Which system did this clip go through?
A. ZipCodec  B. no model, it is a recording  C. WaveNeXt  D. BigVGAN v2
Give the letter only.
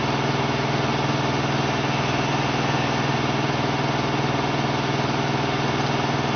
B